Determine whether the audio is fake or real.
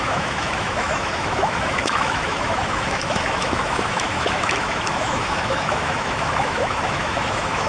fake